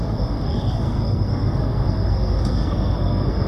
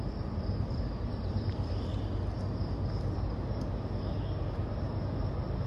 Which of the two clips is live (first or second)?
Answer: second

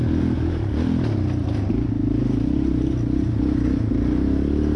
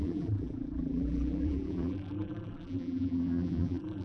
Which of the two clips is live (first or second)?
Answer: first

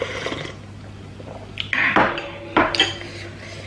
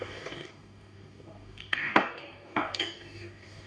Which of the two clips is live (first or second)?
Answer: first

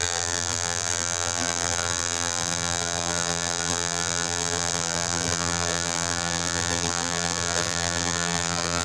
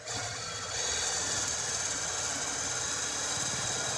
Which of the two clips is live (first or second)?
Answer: second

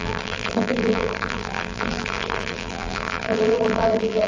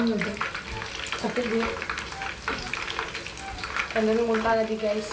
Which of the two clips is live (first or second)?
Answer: second